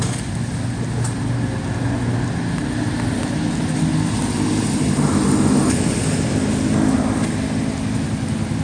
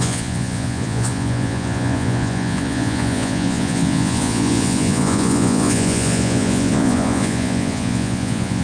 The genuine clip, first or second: first